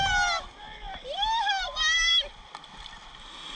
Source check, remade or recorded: recorded